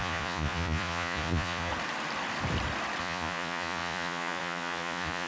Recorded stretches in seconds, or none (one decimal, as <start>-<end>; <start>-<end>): 1.7-3.0